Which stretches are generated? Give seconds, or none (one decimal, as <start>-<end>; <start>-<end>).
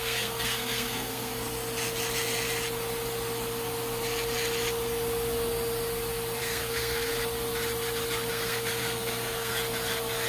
0.0-1.3; 6.4-7.1; 8.3-9.5